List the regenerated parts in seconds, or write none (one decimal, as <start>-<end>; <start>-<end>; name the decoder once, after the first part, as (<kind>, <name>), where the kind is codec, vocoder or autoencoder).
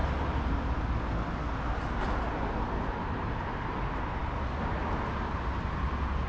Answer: none